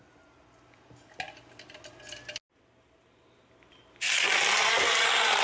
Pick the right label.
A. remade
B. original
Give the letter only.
B